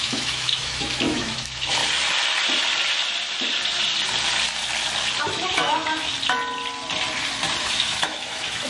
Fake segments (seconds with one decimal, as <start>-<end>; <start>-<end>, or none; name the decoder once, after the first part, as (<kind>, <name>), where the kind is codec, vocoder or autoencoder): 0.0-1.8 (autoencoder, DAC-VAE); 5.2-6.1; 7.6-8.7

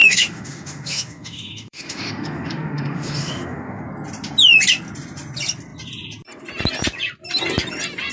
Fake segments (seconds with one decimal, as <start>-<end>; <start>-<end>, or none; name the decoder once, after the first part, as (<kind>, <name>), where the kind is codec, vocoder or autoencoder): 0.0-3.8 (autoencoder, DAC-VAE)

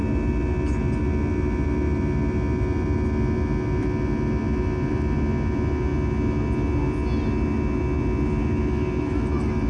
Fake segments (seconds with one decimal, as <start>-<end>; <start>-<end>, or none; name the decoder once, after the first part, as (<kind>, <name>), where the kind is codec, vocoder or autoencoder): none

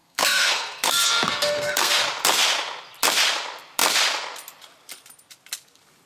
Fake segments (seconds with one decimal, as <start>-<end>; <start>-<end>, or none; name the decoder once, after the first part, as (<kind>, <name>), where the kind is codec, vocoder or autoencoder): 0.0-2.0 (codec, SNAC)

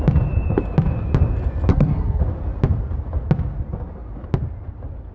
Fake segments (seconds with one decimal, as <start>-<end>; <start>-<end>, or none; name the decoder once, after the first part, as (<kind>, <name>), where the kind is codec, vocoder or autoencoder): 1.7-2.2 (codec, SNAC)